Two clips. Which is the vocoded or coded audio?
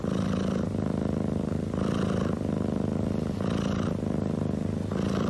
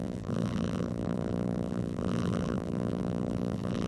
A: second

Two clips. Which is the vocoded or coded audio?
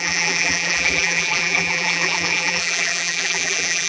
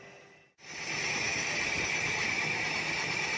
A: first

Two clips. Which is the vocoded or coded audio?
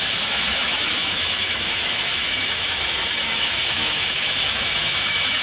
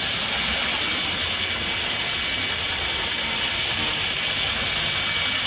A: first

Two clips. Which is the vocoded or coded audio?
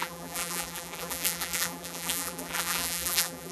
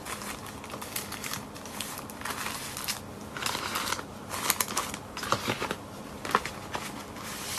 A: first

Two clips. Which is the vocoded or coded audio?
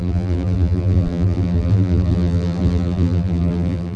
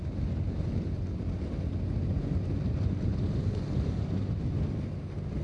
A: first